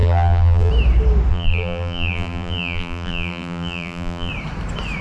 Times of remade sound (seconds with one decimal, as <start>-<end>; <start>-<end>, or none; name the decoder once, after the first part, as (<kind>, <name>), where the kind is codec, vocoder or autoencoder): 0.0-0.7 (vocoder, BigVGAN v2); 1.3-4.3